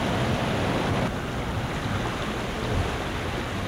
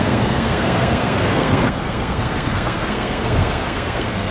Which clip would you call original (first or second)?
first